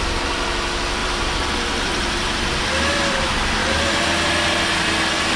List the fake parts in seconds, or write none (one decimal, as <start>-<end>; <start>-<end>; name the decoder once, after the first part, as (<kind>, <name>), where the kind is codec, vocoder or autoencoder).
1.0-2.6 (vocoder, BigVGAN v2); 3.6-4.3

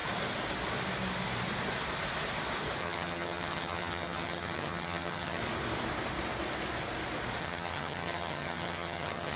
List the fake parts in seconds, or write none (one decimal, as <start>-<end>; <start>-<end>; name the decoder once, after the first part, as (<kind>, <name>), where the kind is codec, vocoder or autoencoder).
2.8-5.4 (vocoder, HiFi-GAN); 7.4-9.4

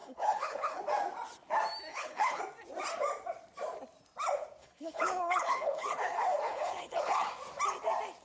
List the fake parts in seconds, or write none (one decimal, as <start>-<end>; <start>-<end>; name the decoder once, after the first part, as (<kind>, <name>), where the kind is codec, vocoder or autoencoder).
0.0-0.8 (codec, HILCodec); 1.9-2.4; 4.6-7.3

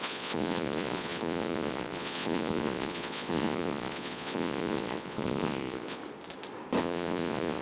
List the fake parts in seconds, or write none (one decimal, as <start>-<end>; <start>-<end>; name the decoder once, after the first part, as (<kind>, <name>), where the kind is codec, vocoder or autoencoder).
0.0-6.0 (vocoder, Vocos); 6.8-7.6

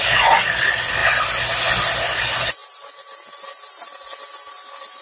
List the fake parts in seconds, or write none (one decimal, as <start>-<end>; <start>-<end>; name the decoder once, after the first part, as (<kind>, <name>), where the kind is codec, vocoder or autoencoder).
none

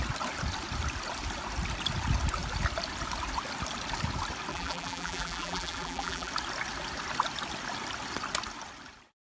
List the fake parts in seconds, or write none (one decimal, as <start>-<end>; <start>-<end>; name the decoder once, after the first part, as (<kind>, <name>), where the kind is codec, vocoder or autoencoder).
4.5-6.3 (vocoder, BigVGAN v2)